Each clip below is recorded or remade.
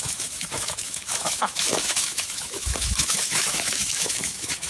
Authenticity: remade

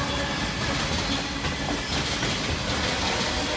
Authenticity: recorded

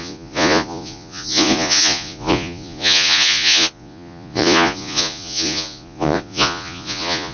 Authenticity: remade